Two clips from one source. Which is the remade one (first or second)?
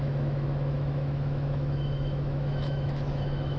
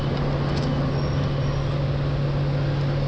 first